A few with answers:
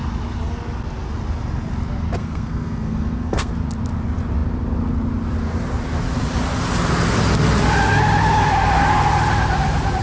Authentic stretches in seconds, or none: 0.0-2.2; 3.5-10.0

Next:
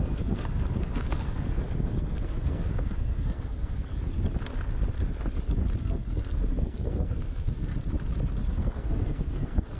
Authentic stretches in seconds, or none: 3.9-5.8; 7.7-8.5

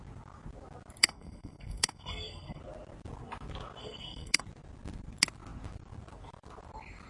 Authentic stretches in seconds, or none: 0.0-1.0; 2.6-3.8; 4.4-7.1

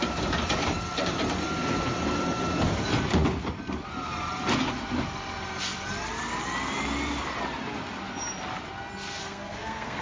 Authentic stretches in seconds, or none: 0.0-9.2

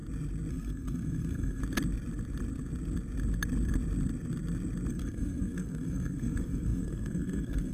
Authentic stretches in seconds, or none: 0.0-0.5; 1.6-4.9

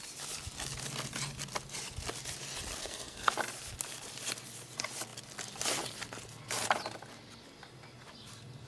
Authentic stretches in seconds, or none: 0.0-2.8; 3.3-8.7

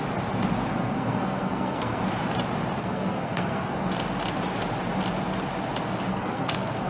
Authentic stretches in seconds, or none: 0.0-0.7; 2.0-2.8; 3.9-6.1